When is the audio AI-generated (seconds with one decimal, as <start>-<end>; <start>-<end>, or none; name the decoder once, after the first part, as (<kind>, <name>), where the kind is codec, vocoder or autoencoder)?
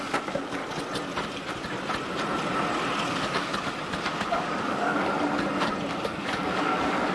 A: 0.0-0.6 (codec, DAC); 3.1-3.5; 4.1-5.1; 5.9-7.1